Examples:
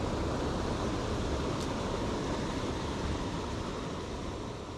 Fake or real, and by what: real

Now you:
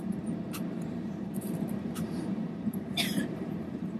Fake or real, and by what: fake, vocoder, BigVGAN v2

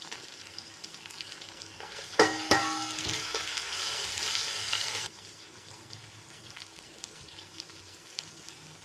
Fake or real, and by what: fake, codec, SNAC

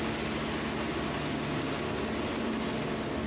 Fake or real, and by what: real